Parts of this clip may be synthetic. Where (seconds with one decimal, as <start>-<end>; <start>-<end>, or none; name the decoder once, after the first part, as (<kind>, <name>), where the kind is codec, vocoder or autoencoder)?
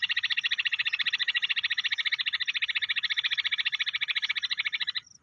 none